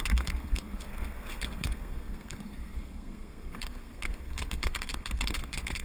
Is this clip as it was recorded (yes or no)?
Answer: no